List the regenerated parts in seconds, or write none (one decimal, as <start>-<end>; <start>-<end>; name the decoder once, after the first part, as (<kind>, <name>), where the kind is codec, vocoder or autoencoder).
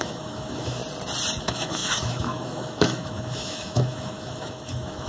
0.0-0.8 (autoencoder, DAC-VAE); 1.4-5.1